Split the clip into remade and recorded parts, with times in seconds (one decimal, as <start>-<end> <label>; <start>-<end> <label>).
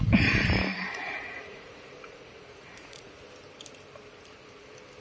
0.0-0.7 recorded; 0.7-3.2 remade; 3.2-5.0 recorded